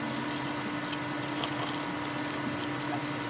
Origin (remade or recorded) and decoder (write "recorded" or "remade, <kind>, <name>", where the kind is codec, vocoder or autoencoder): recorded